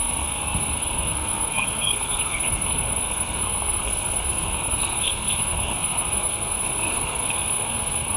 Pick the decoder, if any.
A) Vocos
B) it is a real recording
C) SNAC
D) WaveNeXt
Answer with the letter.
C